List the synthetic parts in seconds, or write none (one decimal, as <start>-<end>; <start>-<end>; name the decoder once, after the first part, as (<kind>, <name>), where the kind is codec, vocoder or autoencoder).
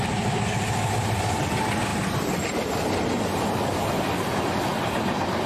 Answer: none